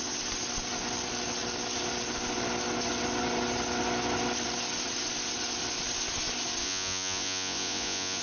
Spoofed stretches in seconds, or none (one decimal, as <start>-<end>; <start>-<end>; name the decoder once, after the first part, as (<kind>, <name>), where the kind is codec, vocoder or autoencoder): 6.6-8.2 (vocoder, Vocos)